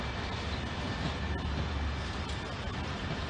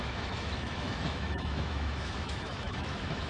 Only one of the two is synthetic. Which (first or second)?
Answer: second